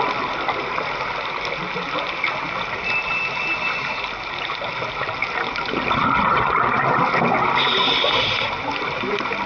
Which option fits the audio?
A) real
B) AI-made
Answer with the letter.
A